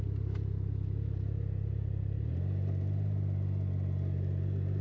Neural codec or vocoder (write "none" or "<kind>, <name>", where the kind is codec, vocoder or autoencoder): none